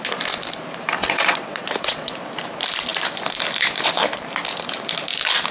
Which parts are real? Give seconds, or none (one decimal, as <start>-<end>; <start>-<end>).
0.0-1.0; 2.3-5.5